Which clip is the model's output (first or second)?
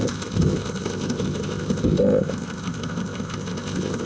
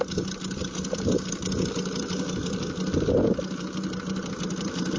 first